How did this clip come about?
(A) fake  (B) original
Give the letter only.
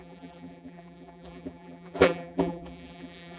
A